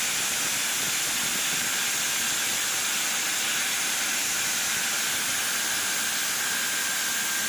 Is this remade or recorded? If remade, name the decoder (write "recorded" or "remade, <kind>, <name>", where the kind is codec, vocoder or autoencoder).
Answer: recorded